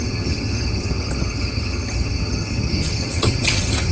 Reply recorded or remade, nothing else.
remade